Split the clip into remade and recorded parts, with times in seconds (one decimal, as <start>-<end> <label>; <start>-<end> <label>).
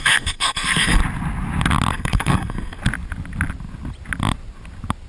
0.0-1.0 remade; 1.0-1.9 recorded; 1.9-2.8 remade; 2.8-5.1 recorded